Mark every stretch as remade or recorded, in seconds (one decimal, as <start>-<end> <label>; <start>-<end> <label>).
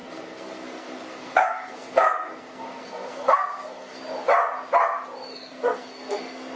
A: 0.0-4.0 remade; 4.0-5.3 recorded; 5.3-6.6 remade